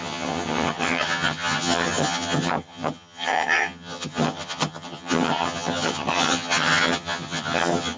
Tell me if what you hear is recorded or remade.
remade